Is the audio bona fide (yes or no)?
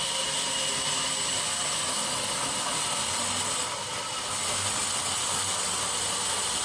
yes